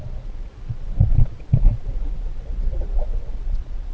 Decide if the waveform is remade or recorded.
remade